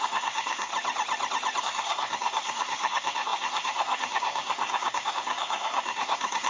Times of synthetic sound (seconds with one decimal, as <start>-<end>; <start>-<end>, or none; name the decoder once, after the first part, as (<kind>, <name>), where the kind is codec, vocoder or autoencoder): 0.0-0.7 (codec, SNAC); 1.6-6.5